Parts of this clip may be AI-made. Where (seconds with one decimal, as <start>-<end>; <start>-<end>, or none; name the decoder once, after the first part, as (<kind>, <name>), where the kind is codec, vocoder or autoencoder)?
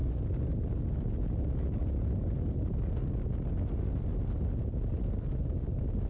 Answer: none